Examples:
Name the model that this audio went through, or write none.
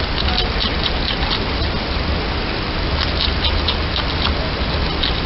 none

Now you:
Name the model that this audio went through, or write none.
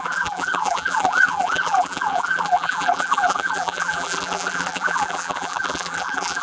vocoder, BigVGAN v2